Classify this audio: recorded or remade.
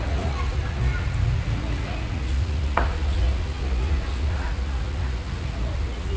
remade